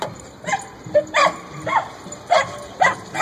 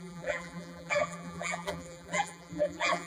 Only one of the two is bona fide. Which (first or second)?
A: first